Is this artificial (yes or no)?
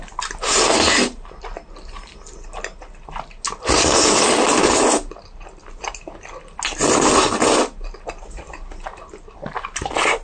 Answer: no